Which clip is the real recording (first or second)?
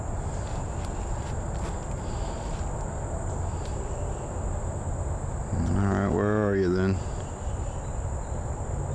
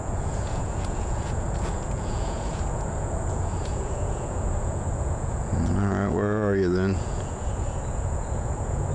first